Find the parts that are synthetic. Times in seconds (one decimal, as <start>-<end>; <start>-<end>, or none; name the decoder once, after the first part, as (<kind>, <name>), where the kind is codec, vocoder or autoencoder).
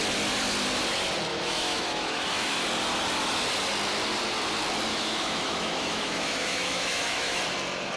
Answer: 1.3-2.6 (autoencoder, DAC-VAE); 4.9-7.4